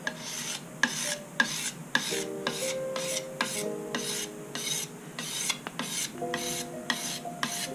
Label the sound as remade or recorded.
recorded